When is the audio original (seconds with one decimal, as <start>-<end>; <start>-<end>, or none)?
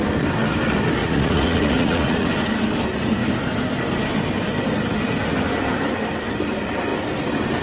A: 0.0-1.0; 2.3-7.6